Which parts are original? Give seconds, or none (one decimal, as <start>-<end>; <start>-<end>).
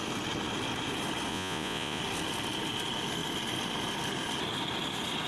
0.0-1.3; 2.0-5.3